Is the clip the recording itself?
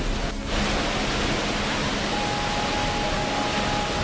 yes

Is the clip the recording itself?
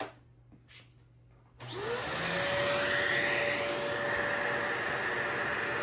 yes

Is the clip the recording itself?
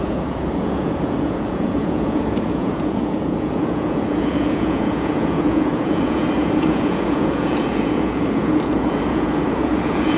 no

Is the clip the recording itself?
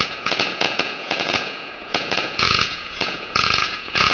no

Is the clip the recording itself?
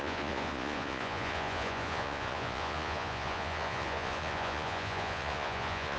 no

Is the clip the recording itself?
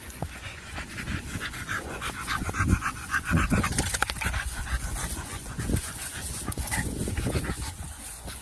no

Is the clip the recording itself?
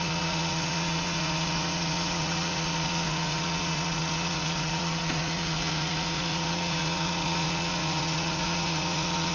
no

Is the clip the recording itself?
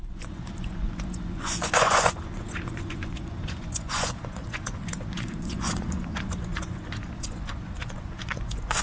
no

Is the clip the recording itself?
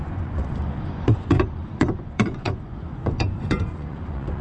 no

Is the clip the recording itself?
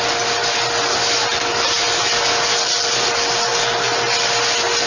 yes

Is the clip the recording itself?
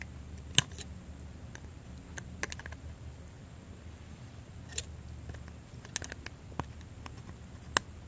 yes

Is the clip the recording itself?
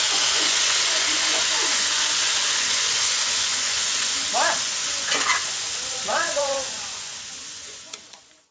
no